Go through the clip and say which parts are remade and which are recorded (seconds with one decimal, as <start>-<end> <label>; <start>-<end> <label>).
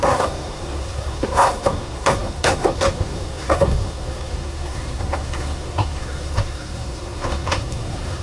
0.0-8.2 remade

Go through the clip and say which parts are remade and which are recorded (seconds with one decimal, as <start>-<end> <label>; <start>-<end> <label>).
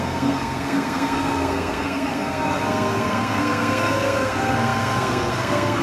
0.0-5.8 remade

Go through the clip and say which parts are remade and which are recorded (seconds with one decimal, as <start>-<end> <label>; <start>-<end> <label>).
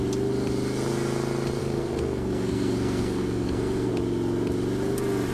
0.0-1.6 recorded; 1.6-3.9 remade; 3.9-5.3 recorded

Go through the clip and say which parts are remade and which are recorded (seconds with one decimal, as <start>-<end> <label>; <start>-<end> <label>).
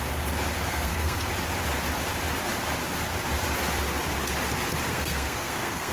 0.0-0.7 recorded; 0.7-1.3 remade; 1.3-4.9 recorded; 4.9-5.9 remade